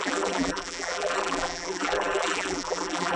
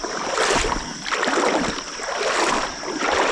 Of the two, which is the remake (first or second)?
first